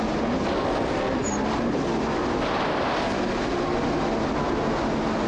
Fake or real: real